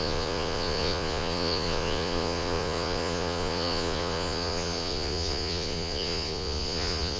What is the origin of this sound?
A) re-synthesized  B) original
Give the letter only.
A